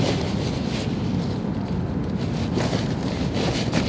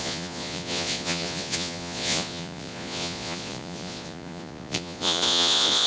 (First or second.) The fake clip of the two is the second